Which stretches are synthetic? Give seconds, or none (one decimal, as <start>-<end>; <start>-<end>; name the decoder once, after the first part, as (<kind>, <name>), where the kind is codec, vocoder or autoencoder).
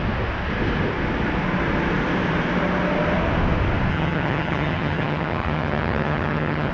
3.9-6.7 (vocoder, HiFi-GAN)